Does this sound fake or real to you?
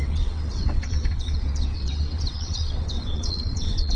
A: fake